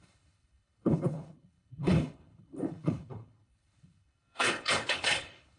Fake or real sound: fake